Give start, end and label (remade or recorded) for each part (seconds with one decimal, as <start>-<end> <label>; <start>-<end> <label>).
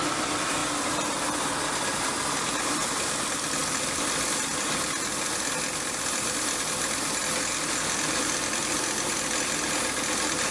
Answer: 0.0-10.5 recorded